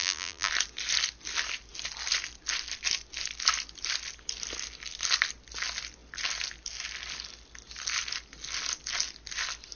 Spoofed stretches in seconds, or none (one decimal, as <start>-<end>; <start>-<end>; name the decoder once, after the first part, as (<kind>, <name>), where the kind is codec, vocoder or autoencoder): 0.0-0.5 (vocoder, BigVGAN v2)